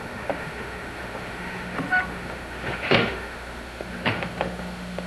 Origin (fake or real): fake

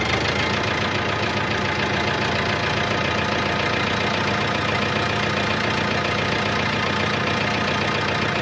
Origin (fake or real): real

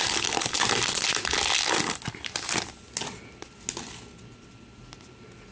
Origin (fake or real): real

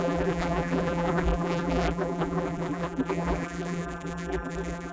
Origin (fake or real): fake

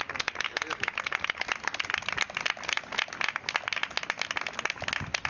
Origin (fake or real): real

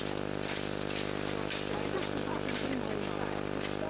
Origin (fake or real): real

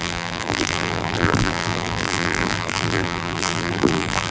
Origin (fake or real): fake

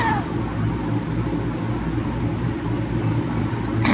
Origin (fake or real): real